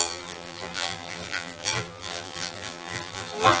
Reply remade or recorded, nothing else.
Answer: remade